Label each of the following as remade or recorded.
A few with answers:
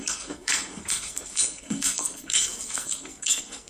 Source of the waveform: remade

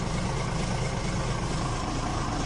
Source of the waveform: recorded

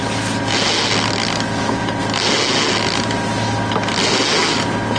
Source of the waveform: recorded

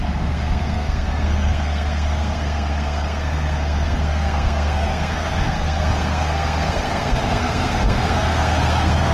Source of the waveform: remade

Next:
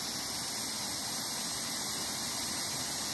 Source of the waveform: recorded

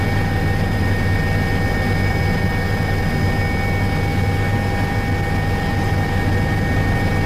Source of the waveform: recorded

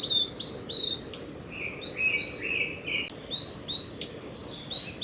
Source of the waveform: recorded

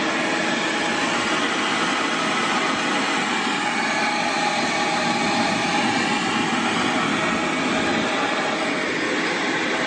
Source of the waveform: recorded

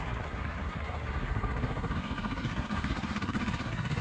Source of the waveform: remade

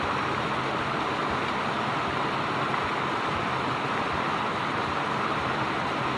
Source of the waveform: recorded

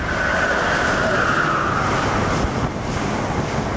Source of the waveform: recorded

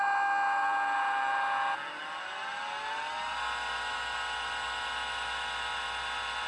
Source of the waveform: recorded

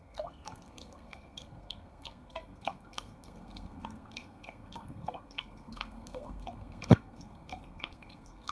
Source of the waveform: remade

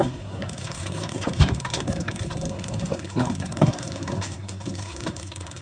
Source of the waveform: remade